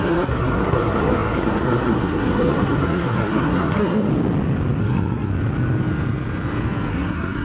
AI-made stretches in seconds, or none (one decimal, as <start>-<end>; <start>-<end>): 0.0-4.1; 4.8-5.3; 6.9-7.4